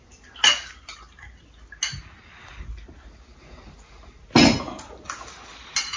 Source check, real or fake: real